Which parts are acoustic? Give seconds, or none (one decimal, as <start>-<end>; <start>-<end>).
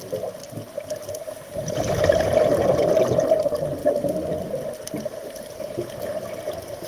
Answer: 0.0-6.9